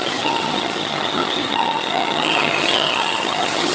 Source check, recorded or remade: remade